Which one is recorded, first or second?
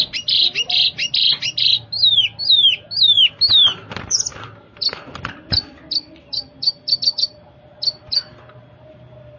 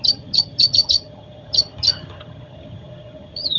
first